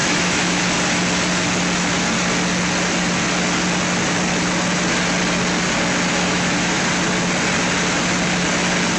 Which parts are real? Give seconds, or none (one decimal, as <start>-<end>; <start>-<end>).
0.6-6.1; 6.8-9.0